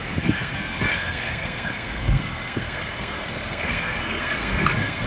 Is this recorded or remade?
remade